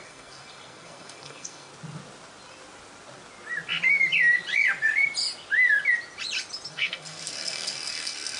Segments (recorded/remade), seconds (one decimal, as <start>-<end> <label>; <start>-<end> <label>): 0.0-1.7 remade; 1.7-6.7 recorded; 6.7-8.4 remade